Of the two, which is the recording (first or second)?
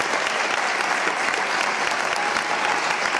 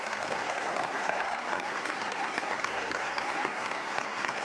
first